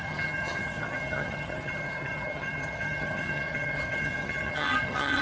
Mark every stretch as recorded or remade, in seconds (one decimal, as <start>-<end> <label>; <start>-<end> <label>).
0.0-5.2 remade

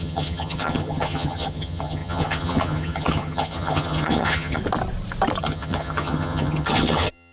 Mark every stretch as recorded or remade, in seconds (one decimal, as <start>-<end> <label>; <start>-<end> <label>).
0.0-4.6 remade; 4.6-5.4 recorded; 5.4-7.3 remade